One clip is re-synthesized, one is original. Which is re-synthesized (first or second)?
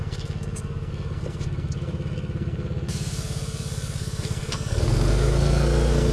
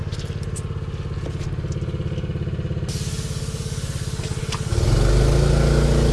first